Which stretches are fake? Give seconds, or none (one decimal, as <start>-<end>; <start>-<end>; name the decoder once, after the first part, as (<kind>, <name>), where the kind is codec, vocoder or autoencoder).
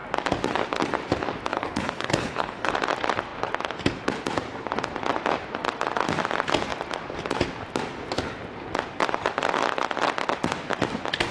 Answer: 1.5-2.7 (codec, HILCodec)